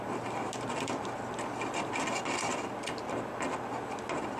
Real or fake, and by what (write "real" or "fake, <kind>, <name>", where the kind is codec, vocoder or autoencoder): real